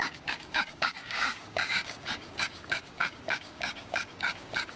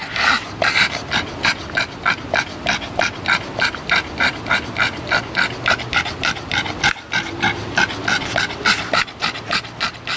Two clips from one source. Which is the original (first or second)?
second